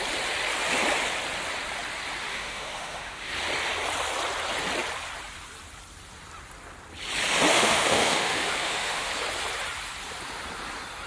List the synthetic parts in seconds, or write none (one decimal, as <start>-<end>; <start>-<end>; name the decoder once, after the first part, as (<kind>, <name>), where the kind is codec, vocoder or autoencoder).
2.3-3.3 (autoencoder, DAC-VAE); 7.5-9.1